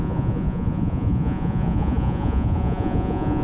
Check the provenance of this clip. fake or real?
fake